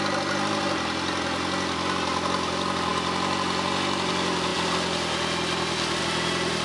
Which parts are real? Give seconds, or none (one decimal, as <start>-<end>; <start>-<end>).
0.0-6.6